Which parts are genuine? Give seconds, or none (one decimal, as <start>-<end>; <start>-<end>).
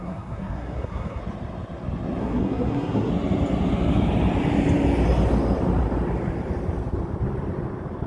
1.2-2.2; 3.1-8.1